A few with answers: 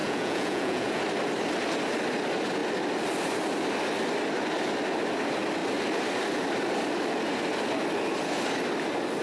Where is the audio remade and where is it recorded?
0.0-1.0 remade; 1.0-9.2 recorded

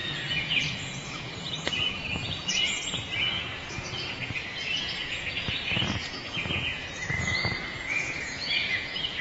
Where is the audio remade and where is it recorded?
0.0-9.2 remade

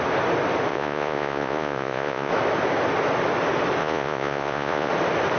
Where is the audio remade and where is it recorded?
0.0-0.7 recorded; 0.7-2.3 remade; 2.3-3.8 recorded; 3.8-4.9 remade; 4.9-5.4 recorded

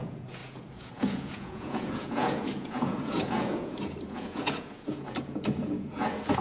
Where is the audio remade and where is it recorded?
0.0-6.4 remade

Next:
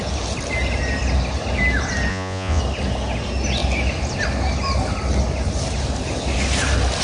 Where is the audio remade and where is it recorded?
0.0-2.1 recorded; 2.1-2.6 remade; 2.6-7.0 recorded